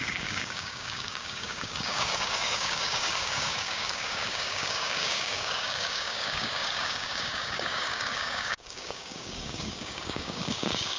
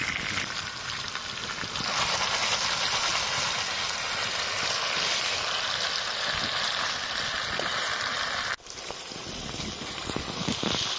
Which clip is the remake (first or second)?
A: first